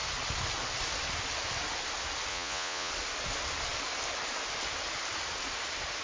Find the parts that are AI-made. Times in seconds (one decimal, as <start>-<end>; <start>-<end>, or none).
2.3-2.9